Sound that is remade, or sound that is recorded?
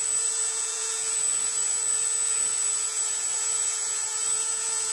remade